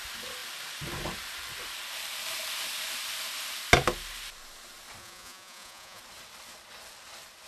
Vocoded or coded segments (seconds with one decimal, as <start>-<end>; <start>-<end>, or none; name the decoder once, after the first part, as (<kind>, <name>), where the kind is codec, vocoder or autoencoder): 5.0-6.0 (vocoder, Vocos)